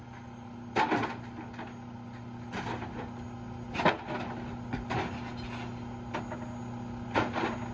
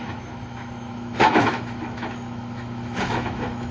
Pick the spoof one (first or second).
second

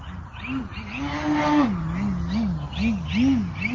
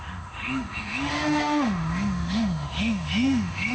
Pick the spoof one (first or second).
second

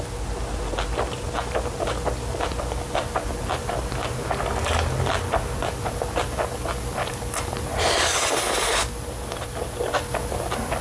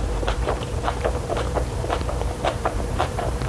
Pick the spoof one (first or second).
second